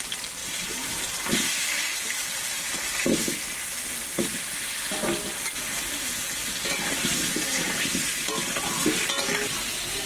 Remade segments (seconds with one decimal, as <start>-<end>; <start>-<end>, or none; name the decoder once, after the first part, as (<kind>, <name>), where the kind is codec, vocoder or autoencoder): 0.4-1.1 (vocoder, BigVGAN v2)